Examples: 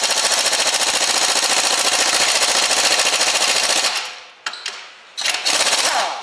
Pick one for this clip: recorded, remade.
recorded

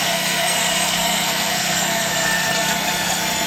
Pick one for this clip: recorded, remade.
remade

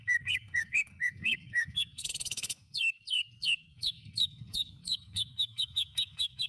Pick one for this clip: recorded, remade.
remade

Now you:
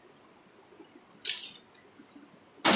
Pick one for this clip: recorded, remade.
recorded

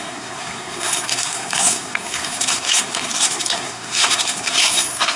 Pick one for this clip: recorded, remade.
remade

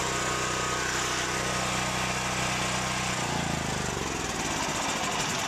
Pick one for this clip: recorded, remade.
recorded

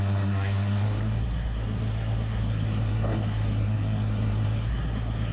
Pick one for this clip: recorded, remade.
remade